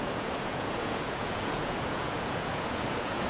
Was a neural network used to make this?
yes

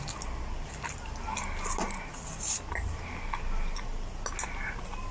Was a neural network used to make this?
no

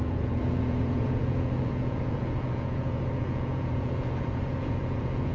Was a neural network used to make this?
yes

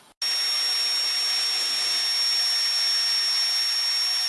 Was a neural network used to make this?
no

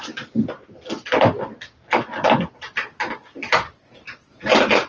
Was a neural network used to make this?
no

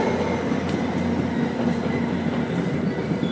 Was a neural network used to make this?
no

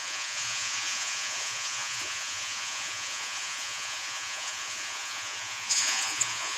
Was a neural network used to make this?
yes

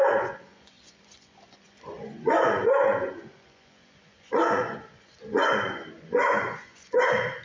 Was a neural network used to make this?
yes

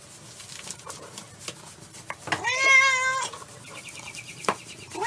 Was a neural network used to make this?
no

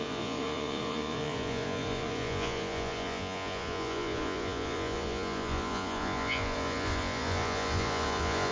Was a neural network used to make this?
yes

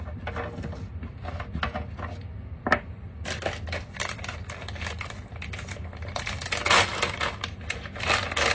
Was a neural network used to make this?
no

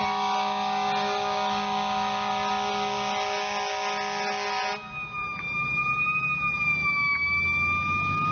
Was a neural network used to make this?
no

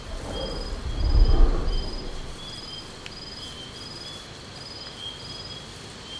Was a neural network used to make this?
no